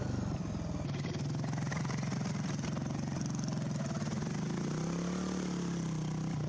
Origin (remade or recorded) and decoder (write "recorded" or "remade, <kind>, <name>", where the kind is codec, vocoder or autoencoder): recorded